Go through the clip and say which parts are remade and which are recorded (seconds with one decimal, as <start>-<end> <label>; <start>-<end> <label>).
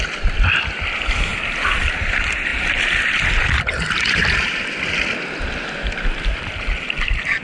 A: 0.0-1.3 remade; 1.3-2.0 recorded; 2.0-7.4 remade